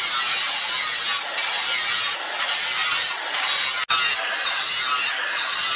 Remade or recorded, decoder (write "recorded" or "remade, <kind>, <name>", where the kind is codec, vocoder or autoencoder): recorded